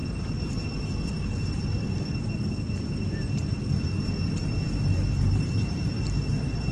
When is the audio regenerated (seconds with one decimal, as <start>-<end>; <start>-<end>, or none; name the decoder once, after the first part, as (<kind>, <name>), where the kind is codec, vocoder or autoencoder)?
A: 4.4-5.8 (vocoder, BigVGAN v2)

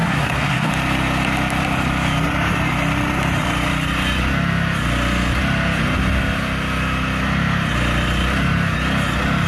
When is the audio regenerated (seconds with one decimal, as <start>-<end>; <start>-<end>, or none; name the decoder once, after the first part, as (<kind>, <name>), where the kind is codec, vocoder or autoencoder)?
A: 0.0-0.7 (codec, SNAC)